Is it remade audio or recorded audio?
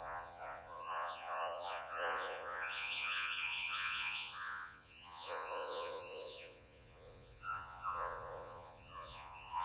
remade